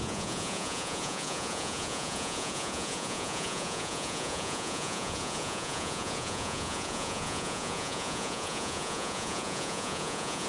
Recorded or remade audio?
remade